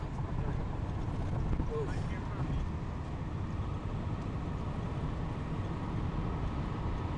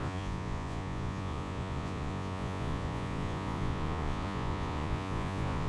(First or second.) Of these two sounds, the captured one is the first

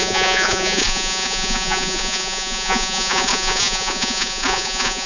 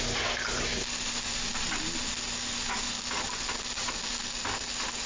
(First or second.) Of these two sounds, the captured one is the second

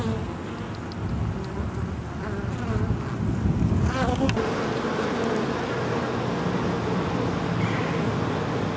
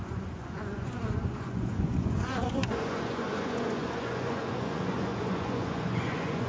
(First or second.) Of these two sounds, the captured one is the first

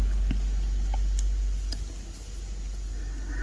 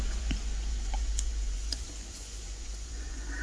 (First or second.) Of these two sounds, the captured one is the first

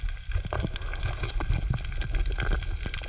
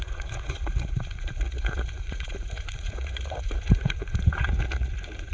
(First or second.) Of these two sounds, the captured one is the first